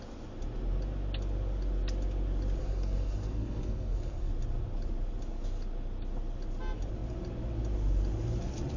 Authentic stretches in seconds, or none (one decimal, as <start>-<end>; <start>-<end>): 0.0-2.6; 4.3-8.8